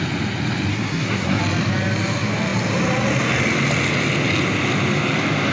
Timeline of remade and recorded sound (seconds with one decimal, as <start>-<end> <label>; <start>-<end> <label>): 0.0-0.7 recorded; 0.7-1.4 remade; 1.4-5.5 recorded